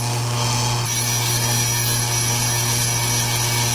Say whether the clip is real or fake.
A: real